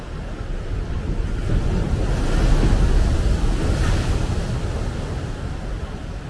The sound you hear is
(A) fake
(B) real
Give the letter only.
B